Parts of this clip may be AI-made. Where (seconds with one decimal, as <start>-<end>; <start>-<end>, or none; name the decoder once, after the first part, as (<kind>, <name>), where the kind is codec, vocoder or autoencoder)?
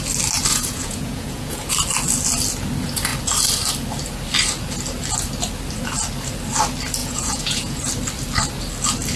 0.5-1.7 (vocoder, Vocos); 7.0-7.8